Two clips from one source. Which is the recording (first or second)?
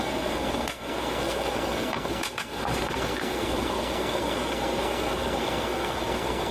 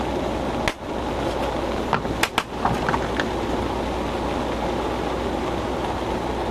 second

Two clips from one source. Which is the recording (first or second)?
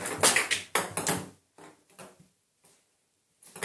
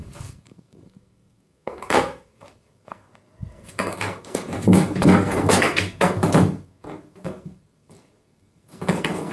first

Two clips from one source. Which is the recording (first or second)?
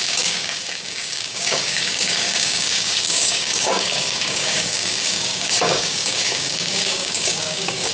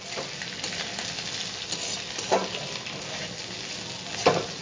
second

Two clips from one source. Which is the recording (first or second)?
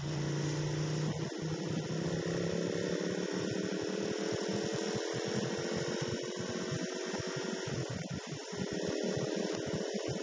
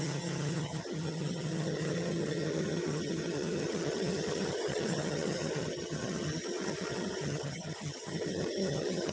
first